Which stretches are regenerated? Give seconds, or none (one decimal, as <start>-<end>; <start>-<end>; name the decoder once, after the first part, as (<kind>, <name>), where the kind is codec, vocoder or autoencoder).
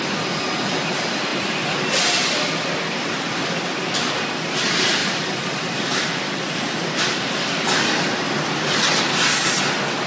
5.0-8.7 (vocoder, BigVGAN v2)